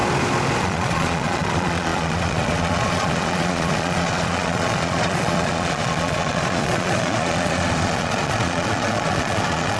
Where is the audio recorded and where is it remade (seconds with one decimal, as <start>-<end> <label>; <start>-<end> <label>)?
0.0-0.6 recorded; 0.6-9.8 remade